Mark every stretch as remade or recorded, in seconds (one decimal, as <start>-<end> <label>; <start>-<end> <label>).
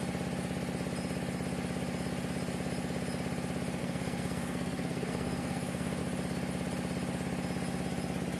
0.0-3.8 recorded; 3.8-6.0 remade; 6.0-8.4 recorded